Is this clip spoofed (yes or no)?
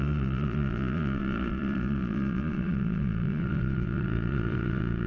yes